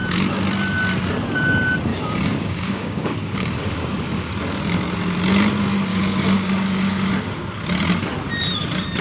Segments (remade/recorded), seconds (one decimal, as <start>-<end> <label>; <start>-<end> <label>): 0.0-1.9 recorded; 1.9-4.3 remade; 4.3-5.9 recorded; 5.9-7.1 remade; 7.1-9.0 recorded